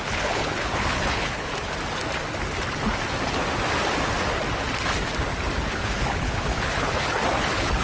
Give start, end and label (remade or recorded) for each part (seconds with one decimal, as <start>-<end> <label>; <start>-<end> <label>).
0.0-1.5 remade; 1.5-5.7 recorded; 5.7-7.8 remade